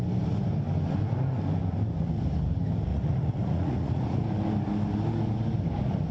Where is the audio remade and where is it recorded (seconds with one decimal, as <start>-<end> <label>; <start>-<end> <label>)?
0.0-2.9 recorded; 2.9-4.2 remade; 4.2-6.1 recorded